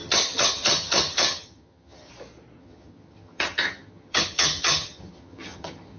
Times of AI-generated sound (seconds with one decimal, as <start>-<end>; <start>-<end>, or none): 0.0-2.1; 2.6-6.0

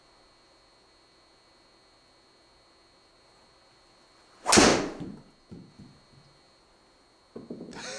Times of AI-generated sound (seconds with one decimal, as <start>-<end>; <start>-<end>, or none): none